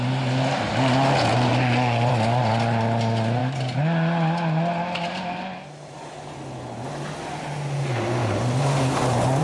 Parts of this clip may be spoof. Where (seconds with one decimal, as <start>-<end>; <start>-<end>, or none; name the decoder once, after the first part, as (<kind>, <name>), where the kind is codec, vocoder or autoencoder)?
none